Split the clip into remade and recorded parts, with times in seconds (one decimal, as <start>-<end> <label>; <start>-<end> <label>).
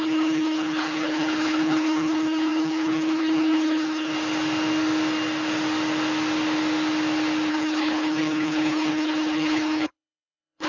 0.0-4.1 remade; 4.1-7.5 recorded; 7.5-10.7 remade